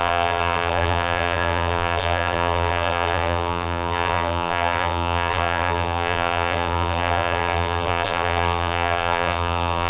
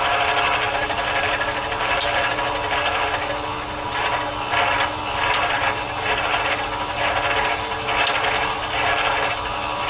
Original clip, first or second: second